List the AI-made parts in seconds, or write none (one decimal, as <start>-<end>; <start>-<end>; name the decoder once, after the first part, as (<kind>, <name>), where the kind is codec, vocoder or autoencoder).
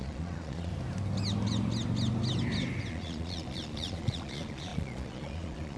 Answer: 0.0-0.7 (vocoder, Vocos); 2.9-5.8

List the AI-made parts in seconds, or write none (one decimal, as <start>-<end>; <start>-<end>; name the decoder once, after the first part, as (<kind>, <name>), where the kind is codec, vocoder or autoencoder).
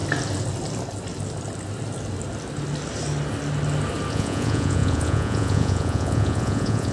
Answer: 4.1-6.9 (vocoder, Vocos)